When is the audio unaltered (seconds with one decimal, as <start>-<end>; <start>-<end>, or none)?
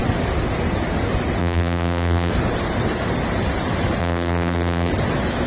0.0-1.4; 2.3-4.0; 4.9-5.5